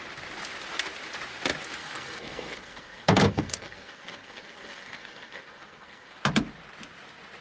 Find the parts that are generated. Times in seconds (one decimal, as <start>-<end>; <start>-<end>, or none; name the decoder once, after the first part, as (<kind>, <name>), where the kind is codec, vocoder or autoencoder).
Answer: 1.8-6.2 (codec, SNAC)